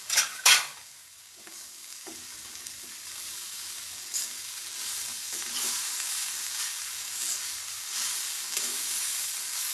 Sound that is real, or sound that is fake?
fake